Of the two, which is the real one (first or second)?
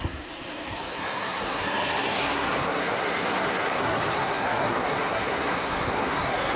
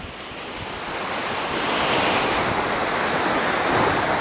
second